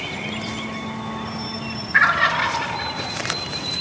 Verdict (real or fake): real